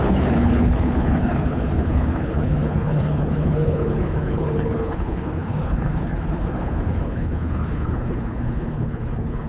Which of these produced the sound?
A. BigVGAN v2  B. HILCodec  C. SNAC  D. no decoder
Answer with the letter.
B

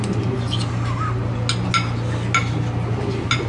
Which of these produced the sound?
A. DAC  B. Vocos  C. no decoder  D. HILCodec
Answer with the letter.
C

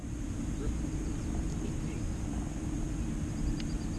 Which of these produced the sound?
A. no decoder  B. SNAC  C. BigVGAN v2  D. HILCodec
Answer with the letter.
A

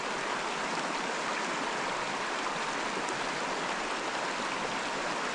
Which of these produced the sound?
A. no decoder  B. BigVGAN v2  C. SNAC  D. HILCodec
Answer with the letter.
A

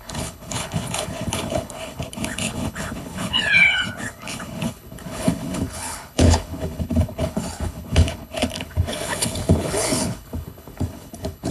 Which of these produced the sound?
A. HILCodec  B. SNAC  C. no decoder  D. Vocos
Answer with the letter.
A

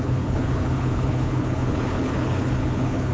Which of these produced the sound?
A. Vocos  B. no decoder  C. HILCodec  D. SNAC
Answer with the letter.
C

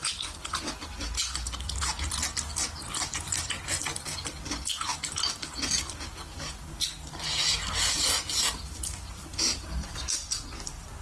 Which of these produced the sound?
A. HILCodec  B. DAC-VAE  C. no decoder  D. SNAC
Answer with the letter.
C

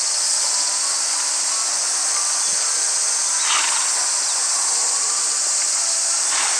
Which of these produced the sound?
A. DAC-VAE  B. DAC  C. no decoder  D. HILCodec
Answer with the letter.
C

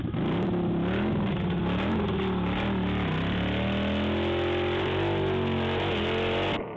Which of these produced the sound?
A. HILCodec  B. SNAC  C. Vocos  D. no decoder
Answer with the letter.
D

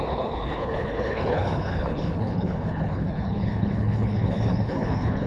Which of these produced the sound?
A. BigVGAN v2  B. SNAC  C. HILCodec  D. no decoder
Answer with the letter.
C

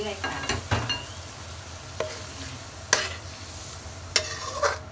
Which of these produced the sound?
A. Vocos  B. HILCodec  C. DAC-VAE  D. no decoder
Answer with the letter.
D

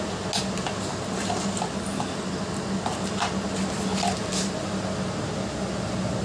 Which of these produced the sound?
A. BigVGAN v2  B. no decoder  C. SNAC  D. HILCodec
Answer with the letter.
B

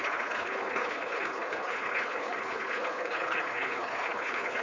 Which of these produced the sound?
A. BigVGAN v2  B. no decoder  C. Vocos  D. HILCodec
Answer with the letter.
D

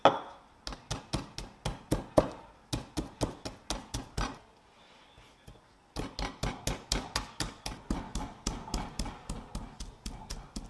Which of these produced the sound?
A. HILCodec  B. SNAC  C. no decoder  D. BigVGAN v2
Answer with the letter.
C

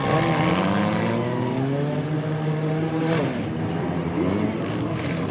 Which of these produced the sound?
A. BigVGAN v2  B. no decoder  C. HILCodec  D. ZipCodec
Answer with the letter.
B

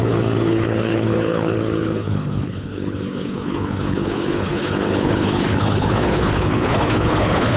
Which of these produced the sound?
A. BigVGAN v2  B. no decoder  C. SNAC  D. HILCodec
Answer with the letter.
D